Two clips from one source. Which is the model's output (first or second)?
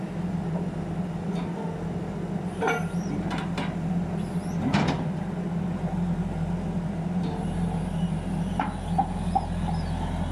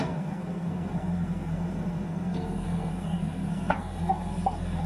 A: second